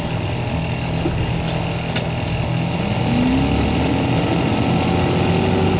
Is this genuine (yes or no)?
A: yes